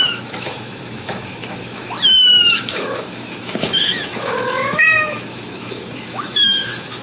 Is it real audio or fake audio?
fake